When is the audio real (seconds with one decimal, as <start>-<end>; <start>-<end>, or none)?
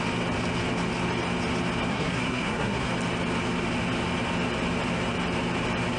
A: 0.0-1.9; 2.9-6.0